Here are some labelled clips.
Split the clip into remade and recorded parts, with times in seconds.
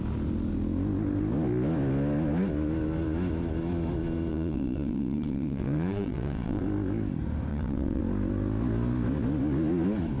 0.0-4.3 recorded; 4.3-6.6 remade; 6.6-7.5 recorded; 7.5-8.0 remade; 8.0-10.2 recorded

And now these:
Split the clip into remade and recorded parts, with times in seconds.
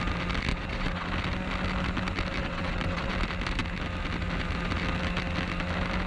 0.0-0.5 recorded; 0.5-1.1 remade; 1.1-2.4 recorded; 2.4-3.1 remade; 3.1-6.1 recorded